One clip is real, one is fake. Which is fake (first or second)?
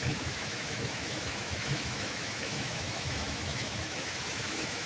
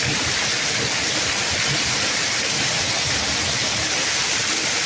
first